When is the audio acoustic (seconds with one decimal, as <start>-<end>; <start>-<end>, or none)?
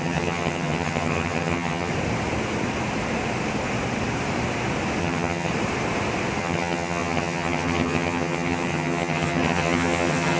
1.9-5.0; 5.5-6.4